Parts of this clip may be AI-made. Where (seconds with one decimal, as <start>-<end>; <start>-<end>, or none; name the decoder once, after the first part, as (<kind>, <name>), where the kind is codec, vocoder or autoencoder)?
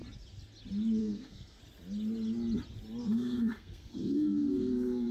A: 1.0-1.6 (codec, SNAC); 3.0-5.1